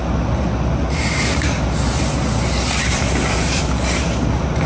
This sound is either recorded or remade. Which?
recorded